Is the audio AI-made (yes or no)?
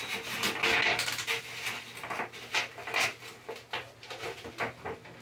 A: no